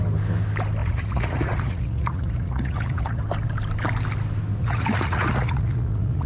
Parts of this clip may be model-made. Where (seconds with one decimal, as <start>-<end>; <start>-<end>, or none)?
0.8-3.2; 4.6-6.3